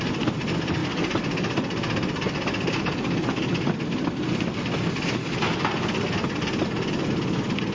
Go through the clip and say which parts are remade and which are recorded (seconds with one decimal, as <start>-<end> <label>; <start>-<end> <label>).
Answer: 0.0-7.7 recorded